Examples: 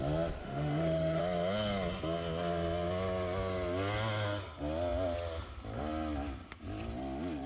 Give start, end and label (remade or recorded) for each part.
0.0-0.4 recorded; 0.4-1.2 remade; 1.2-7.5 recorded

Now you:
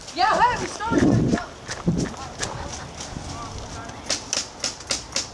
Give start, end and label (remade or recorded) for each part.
0.0-5.3 recorded